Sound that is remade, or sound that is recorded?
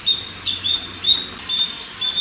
recorded